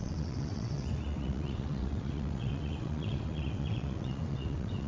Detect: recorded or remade remade